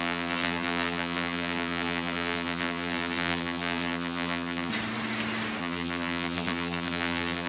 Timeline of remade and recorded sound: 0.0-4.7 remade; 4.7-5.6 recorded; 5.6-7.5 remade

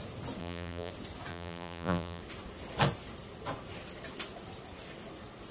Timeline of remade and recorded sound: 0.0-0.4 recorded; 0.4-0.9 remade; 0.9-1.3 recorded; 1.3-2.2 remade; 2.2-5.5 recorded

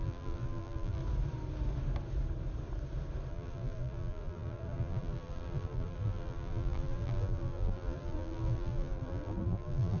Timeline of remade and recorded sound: 0.0-1.0 remade; 1.0-3.3 recorded; 3.3-10.0 remade

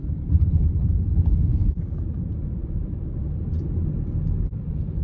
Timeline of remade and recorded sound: 0.0-1.1 remade; 1.1-1.5 recorded; 1.5-3.7 remade; 3.7-5.0 recorded